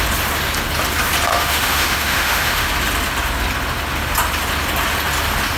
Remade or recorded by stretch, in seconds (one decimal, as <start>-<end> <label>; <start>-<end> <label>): 0.0-1.3 recorded; 1.3-2.7 remade; 2.7-5.6 recorded